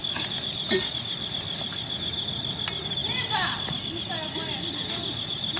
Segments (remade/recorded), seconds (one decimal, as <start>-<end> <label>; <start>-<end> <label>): 0.0-5.6 recorded